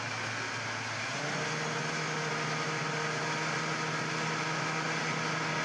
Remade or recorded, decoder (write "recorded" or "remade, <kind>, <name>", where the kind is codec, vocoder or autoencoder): recorded